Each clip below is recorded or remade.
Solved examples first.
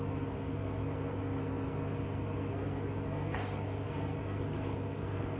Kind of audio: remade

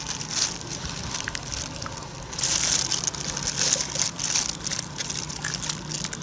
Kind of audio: recorded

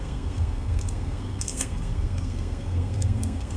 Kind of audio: remade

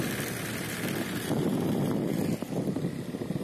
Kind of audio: recorded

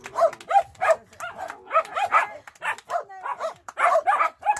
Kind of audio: recorded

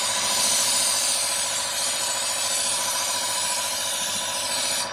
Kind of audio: recorded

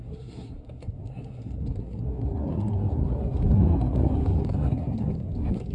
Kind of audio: remade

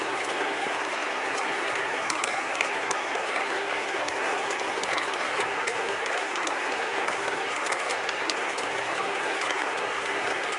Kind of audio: remade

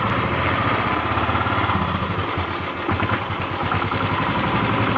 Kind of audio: recorded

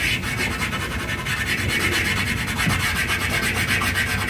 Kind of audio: recorded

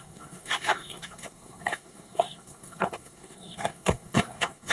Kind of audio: remade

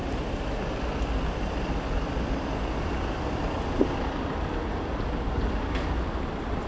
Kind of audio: recorded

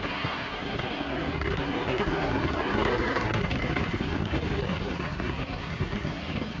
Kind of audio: remade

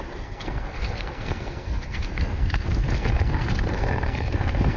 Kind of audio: remade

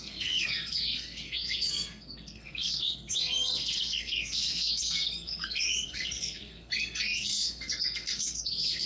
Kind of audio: remade